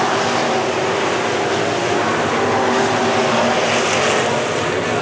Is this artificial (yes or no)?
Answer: no